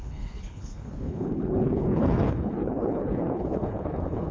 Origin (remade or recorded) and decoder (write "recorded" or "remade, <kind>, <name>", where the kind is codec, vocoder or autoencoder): remade, codec, HILCodec